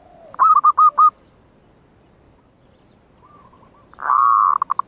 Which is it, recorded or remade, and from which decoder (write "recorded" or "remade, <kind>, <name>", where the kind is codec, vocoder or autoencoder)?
recorded